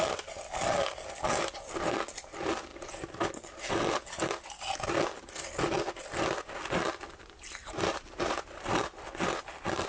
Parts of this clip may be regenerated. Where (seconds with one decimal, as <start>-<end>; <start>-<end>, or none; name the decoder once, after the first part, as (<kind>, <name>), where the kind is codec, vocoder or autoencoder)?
2.7-3.7 (vocoder, BigVGAN v2); 7.6-8.8